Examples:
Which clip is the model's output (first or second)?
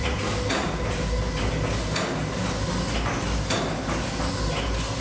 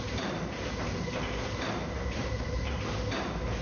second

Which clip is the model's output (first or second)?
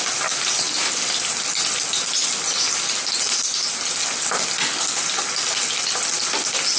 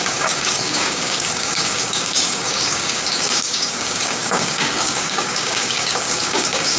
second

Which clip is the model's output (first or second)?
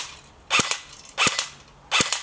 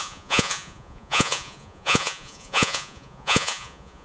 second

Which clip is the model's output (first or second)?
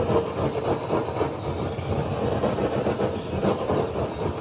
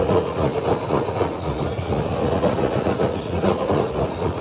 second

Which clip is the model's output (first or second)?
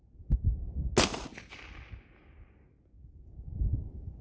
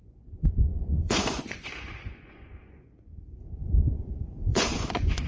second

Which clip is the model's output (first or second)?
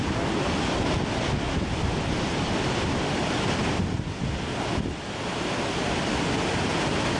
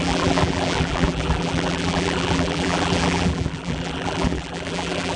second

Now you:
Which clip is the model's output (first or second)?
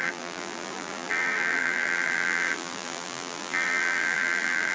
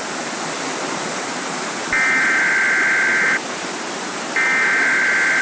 first